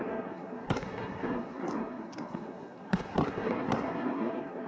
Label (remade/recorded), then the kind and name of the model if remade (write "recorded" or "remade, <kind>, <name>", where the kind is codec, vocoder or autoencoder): remade, codec, SNAC